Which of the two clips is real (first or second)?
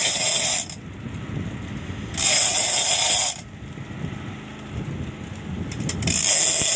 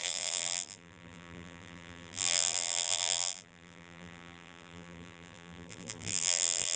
first